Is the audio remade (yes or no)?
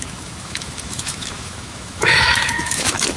yes